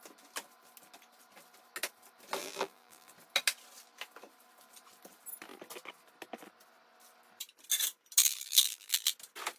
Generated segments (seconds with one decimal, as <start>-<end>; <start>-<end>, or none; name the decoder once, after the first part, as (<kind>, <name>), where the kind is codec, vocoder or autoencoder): 2.4-3.1 (vocoder, BigVGAN v2); 8.2-9.1

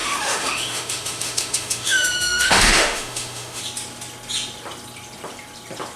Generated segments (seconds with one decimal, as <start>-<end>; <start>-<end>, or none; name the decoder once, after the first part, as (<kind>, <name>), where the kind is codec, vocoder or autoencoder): 0.0-3.6 (autoencoder, DAC-VAE)

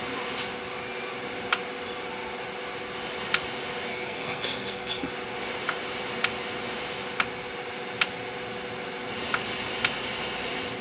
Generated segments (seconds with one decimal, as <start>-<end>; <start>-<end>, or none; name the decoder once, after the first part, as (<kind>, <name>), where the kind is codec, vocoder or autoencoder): 3.9-5.1 (codec, SNAC)

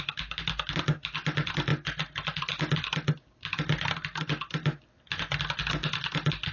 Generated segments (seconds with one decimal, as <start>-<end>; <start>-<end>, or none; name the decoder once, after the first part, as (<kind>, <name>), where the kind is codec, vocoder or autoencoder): none

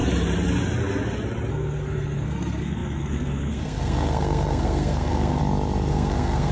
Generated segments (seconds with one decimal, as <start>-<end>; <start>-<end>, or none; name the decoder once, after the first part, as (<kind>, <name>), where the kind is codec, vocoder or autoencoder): 1.5-5.4 (codec, SNAC); 5.9-6.5

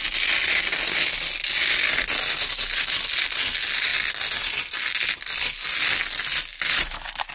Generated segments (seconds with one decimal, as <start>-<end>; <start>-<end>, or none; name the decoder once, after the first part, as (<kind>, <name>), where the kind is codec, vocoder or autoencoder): none